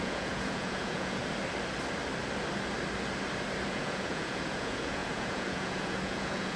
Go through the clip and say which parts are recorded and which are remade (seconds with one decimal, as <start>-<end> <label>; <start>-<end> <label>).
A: 0.0-1.2 remade; 1.2-3.7 recorded; 3.7-6.6 remade